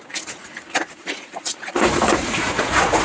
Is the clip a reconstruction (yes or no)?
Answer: yes